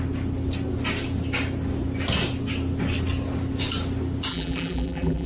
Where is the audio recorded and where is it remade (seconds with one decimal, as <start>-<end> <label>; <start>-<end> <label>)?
0.0-4.3 recorded; 4.3-5.3 remade